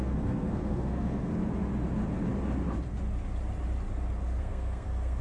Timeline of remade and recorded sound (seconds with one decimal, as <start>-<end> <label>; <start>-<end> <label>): 0.0-1.3 remade; 1.3-4.4 recorded; 4.4-5.2 remade